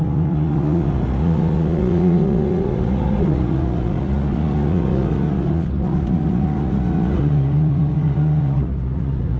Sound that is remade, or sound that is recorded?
remade